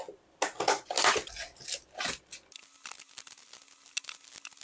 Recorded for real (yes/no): yes